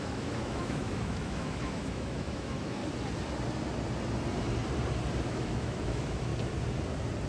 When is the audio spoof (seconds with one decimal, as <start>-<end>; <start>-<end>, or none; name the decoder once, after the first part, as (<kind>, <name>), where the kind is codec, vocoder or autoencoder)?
0.0-2.8 (autoencoder, DAC-VAE); 5.2-6.3